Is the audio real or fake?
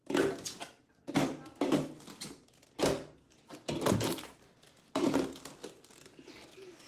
real